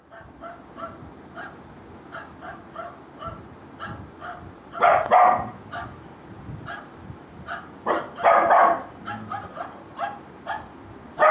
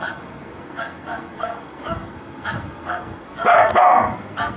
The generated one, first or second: second